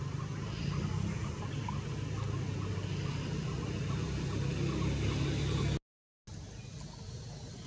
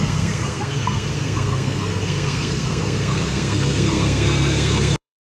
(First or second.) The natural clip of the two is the first